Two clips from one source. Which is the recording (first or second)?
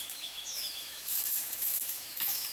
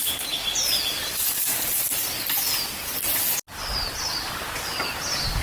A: second